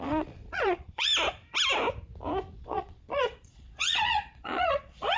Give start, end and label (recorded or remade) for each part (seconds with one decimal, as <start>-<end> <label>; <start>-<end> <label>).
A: 0.0-1.1 remade; 1.1-2.6 recorded; 2.6-5.2 remade